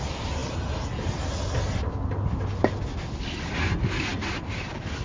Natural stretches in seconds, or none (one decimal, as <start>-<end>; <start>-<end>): 0.0-5.0